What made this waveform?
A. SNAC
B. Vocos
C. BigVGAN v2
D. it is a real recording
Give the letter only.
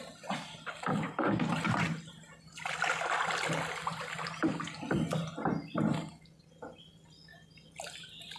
D